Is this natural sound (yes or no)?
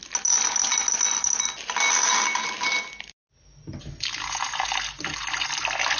yes